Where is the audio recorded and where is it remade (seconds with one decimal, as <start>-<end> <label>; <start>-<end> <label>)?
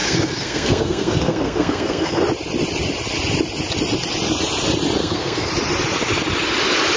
0.0-2.2 remade; 2.2-5.0 recorded; 5.0-5.5 remade; 5.5-7.0 recorded